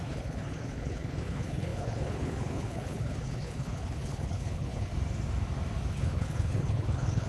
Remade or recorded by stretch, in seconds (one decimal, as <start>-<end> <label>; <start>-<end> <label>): 0.0-4.9 remade; 4.9-5.9 recorded; 5.9-7.3 remade